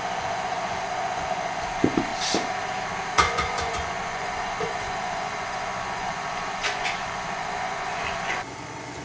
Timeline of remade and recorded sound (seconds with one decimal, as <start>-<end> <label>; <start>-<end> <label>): 0.0-2.1 remade; 2.1-3.1 recorded; 3.1-9.0 remade